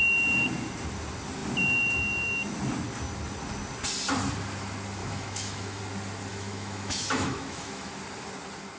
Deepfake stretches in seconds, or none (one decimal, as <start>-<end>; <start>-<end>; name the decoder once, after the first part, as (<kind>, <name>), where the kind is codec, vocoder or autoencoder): 5.0-5.8 (autoencoder, DAC-VAE); 6.3-7.9